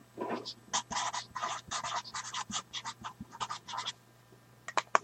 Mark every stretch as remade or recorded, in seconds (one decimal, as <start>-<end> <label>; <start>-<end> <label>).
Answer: 0.0-1.4 recorded; 1.4-3.9 remade; 3.9-5.0 recorded